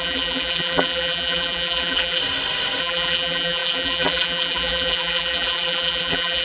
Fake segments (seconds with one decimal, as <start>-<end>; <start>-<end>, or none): 0.0-2.2; 2.8-6.4